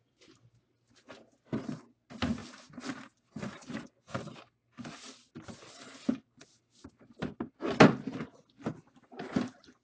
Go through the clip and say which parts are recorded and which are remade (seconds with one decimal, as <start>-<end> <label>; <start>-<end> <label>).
0.0-9.8 recorded